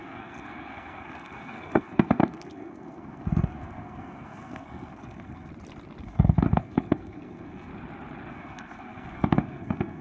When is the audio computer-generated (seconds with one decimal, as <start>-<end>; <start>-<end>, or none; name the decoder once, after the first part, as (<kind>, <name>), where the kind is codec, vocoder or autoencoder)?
0.0-5.5 (codec, SNAC); 6.0-7.7; 8.3-10.0